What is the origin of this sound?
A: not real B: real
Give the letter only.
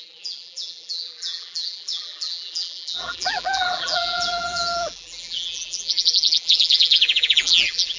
A